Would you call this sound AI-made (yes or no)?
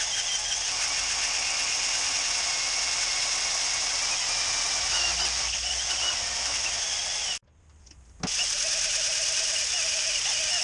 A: no